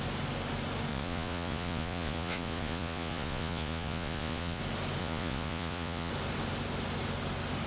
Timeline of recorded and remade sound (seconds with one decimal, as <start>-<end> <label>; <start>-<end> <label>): 0.0-0.9 recorded; 0.9-4.6 remade; 4.6-5.0 recorded; 5.0-6.1 remade; 6.1-7.7 recorded